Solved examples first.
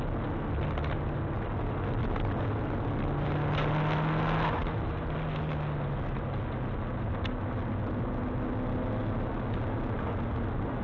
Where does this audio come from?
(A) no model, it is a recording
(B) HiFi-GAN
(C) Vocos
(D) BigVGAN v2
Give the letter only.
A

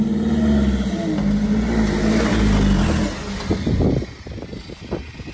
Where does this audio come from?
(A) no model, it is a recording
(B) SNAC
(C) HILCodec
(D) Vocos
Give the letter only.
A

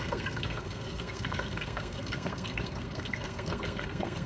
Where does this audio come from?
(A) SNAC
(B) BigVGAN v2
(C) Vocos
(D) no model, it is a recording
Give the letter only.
A